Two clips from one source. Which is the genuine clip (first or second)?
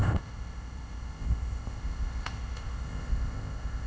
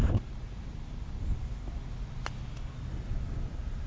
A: second